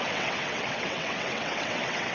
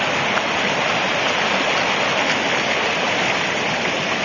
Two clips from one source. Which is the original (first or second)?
second